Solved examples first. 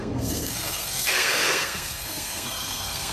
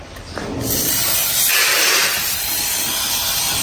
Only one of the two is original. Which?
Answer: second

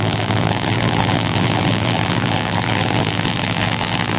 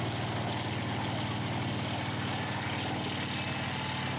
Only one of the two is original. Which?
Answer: second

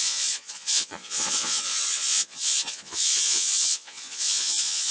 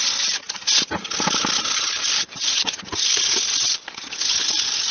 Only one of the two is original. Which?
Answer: second